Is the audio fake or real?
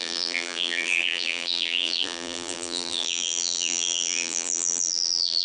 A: fake